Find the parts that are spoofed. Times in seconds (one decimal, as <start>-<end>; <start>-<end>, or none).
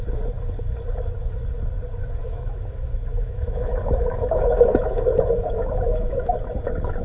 2.2-6.3